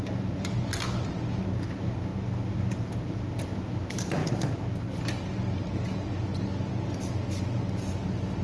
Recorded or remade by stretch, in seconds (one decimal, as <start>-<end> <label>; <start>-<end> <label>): 0.0-8.4 recorded